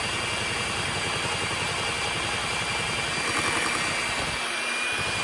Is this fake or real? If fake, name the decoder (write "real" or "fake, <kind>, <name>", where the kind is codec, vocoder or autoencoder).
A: real